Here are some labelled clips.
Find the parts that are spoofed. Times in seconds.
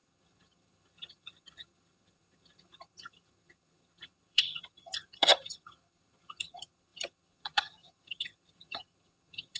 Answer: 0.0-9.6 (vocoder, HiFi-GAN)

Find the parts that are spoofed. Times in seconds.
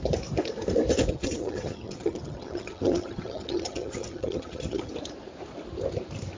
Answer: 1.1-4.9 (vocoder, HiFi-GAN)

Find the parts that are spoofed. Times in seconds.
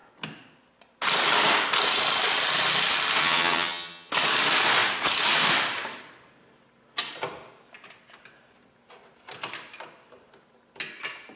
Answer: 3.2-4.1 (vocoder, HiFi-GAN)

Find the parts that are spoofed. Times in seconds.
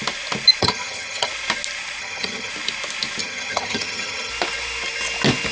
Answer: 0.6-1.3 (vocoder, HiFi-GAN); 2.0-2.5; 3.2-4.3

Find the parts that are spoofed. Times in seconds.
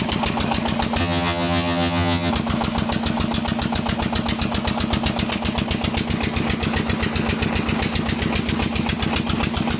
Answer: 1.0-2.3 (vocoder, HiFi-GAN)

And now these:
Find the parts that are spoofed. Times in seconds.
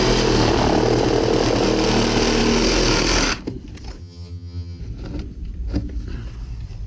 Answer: 4.0-4.8 (vocoder, HiFi-GAN)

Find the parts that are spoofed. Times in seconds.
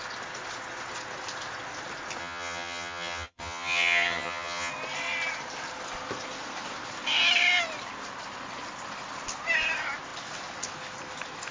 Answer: 2.2-4.7 (vocoder, HiFi-GAN)